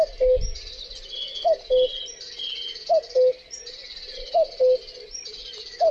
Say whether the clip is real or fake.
real